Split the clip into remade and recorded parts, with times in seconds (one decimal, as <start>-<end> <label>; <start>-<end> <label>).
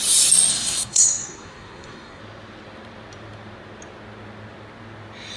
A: 0.0-0.5 recorded; 0.5-2.2 remade; 2.2-5.4 recorded